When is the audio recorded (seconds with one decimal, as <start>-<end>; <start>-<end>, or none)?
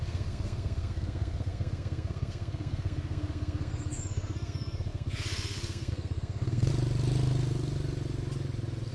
6.7-8.9